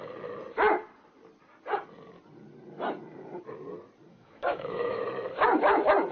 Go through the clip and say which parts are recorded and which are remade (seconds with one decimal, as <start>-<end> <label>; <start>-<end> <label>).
0.0-4.1 recorded; 4.1-5.0 remade; 5.0-6.1 recorded